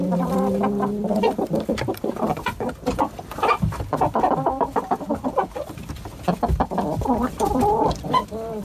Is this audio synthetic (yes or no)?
yes